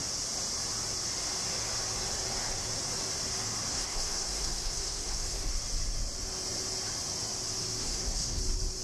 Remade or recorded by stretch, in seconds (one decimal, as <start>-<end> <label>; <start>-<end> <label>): 0.0-3.7 recorded; 3.7-5.5 remade; 5.5-7.8 recorded; 7.8-8.4 remade; 8.4-8.8 recorded